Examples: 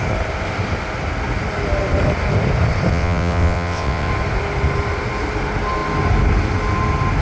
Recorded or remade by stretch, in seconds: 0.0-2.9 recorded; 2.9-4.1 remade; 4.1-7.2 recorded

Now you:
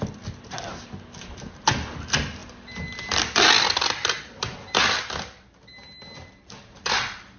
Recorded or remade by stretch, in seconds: 0.0-7.4 recorded

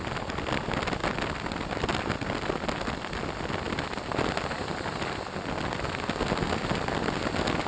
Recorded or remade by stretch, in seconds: 0.0-7.7 recorded

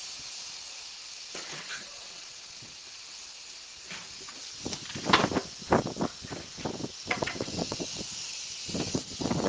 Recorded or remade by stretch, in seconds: 0.0-1.3 recorded; 1.3-2.7 remade; 2.7-7.1 recorded; 7.1-7.9 remade; 7.9-8.9 recorded; 8.9-9.5 remade

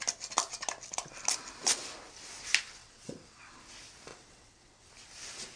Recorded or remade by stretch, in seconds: 0.0-2.8 recorded; 2.8-3.6 remade; 3.6-4.1 recorded; 4.1-4.9 remade; 4.9-5.6 recorded